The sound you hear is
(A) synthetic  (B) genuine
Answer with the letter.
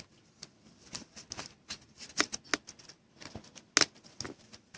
B